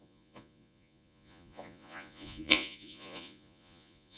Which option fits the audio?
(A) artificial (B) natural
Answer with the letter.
A